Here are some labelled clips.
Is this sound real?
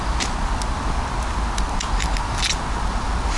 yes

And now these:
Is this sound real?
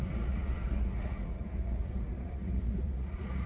no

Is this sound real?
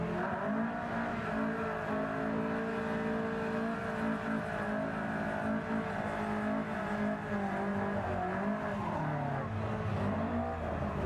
yes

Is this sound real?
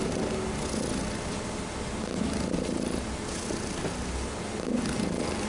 yes